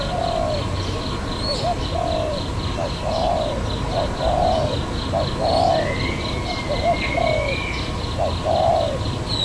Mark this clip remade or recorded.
recorded